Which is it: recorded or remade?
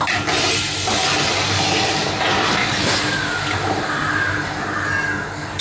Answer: recorded